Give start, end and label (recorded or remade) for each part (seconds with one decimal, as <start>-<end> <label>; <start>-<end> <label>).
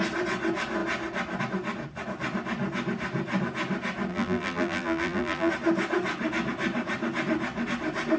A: 0.0-4.1 recorded; 4.1-5.5 remade; 5.5-8.2 recorded